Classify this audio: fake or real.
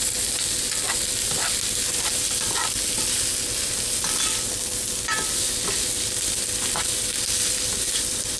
real